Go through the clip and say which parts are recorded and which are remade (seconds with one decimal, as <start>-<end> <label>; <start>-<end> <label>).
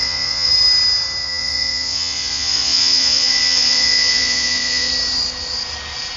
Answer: 0.0-0.5 remade; 0.5-1.2 recorded; 1.2-4.9 remade; 4.9-6.2 recorded